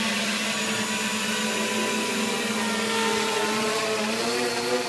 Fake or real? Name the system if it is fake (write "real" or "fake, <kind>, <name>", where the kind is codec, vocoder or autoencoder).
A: real